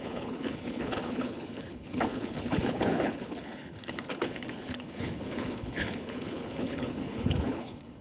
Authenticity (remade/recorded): remade